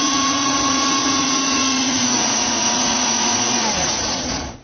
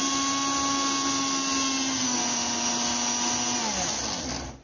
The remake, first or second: first